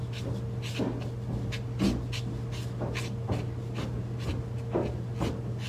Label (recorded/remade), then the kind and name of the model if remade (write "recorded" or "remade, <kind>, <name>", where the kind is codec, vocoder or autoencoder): recorded